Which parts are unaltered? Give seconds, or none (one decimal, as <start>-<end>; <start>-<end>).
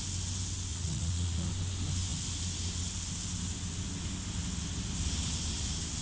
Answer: 0.0-0.7; 1.5-6.0